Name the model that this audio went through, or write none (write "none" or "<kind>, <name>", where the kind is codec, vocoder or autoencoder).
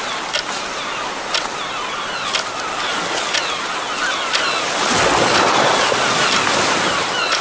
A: none